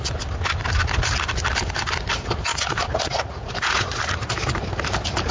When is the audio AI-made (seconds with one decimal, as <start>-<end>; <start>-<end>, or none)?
2.5-4.3